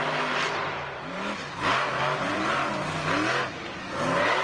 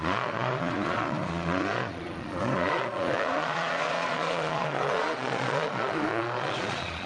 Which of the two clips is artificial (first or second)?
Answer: second